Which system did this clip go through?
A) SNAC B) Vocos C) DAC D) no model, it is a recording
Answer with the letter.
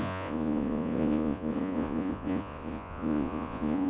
B